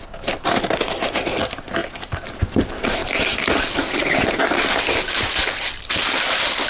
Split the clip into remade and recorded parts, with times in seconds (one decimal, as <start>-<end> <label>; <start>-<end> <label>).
0.0-6.7 recorded